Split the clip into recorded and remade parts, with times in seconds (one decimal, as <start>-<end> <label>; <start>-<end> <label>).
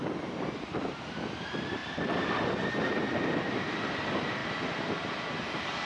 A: 0.0-1.8 remade; 1.8-3.5 recorded; 3.5-5.9 remade